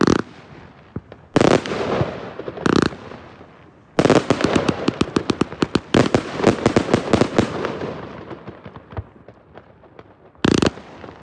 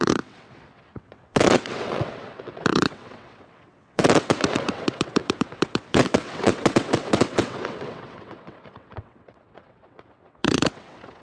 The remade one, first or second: second